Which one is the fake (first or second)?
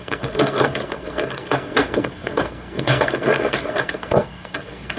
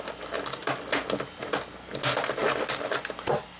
first